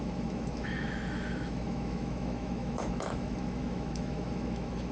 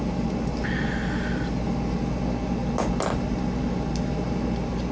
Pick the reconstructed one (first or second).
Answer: first